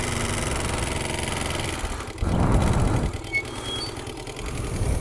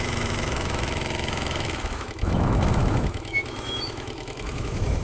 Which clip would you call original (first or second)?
first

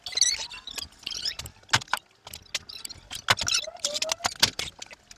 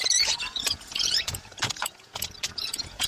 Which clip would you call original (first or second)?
first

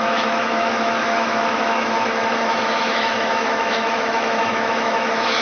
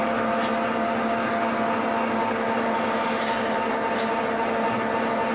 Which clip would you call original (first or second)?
second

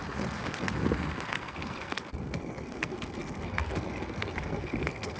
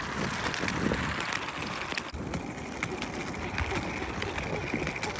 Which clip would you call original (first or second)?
second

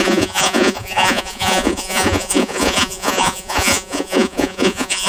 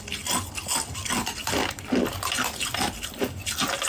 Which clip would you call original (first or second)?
second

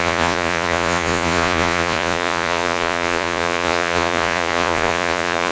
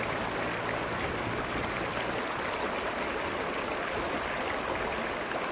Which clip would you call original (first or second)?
second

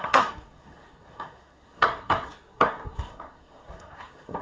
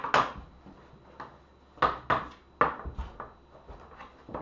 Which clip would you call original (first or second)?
second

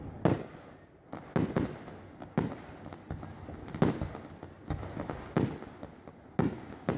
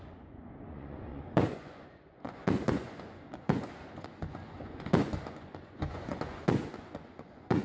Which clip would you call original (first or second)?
first